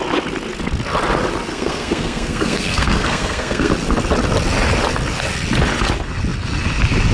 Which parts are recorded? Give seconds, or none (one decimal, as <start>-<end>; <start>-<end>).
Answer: 0.0-1.5; 3.7-7.1